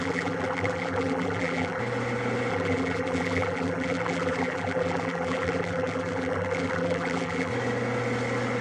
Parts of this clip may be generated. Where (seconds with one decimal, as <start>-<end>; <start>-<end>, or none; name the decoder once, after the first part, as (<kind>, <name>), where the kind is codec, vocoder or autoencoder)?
0.0-1.8 (vocoder, BigVGAN v2); 2.5-7.5